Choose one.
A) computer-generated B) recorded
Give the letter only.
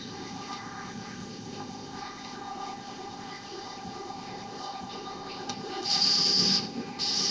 A